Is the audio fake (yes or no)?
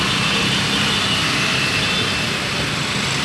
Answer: no